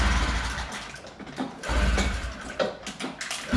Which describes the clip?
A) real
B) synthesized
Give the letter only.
A